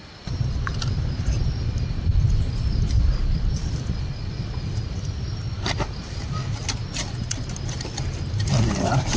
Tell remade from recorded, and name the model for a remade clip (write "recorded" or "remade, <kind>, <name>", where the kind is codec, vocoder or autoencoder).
recorded